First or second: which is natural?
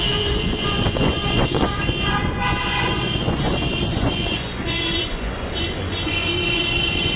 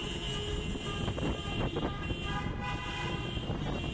second